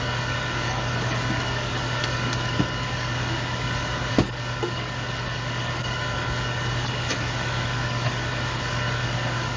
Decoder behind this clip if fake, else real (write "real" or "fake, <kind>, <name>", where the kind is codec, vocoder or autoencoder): fake, codec, DAC